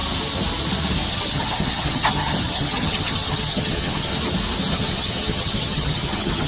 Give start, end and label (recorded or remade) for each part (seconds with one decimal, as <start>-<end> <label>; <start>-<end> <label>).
0.0-1.1 recorded; 1.1-4.1 remade; 4.1-4.7 recorded; 4.7-6.5 remade